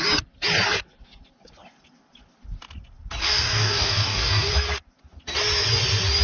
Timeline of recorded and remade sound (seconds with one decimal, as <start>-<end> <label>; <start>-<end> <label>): 0.0-3.2 recorded; 3.2-4.5 remade; 4.5-6.2 recorded